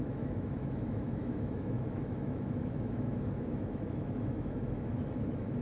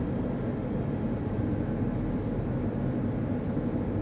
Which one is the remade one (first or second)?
first